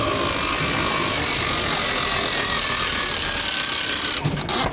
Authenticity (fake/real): real